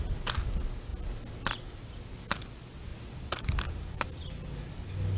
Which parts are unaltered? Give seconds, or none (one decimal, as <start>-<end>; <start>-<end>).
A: 0.0-5.2